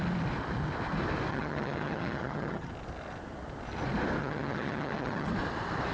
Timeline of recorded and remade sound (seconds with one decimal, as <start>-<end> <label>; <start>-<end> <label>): 0.0-1.3 recorded; 1.3-2.7 remade; 2.7-4.2 recorded; 4.2-5.3 remade; 5.3-5.9 recorded